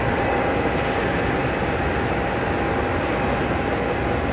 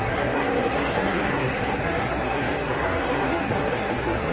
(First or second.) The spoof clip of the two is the second